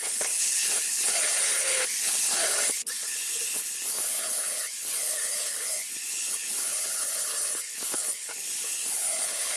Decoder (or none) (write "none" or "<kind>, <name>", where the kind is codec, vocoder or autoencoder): codec, HILCodec